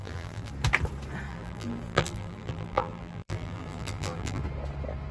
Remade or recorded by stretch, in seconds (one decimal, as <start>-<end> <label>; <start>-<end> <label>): 0.0-0.5 remade; 0.5-1.3 recorded; 1.3-4.4 remade; 4.4-5.1 recorded